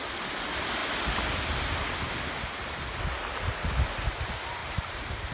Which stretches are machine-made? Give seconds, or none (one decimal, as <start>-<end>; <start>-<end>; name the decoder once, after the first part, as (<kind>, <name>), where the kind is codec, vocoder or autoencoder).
4.6-5.3 (vocoder, BigVGAN v2)